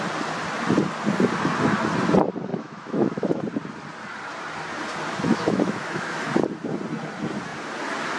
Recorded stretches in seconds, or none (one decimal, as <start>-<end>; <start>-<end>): 0.0-2.5; 3.4-5.3; 6.3-8.2